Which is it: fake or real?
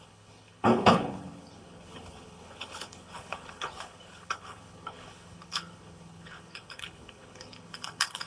fake